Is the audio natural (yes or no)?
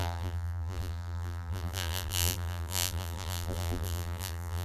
no